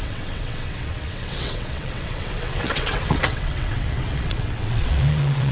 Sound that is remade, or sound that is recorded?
remade